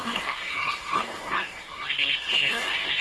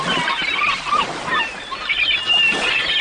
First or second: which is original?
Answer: second